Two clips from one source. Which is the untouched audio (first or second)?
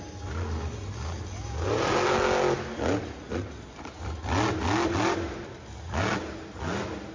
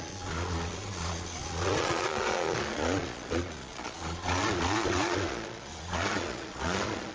first